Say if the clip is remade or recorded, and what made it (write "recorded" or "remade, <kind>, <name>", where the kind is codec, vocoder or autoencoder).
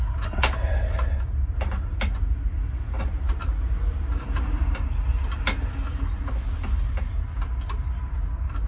recorded